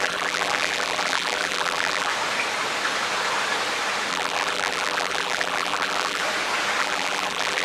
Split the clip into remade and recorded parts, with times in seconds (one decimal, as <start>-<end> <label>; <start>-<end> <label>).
0.0-2.1 remade; 2.1-4.1 recorded; 4.1-6.2 remade; 6.2-6.8 recorded; 6.8-7.6 remade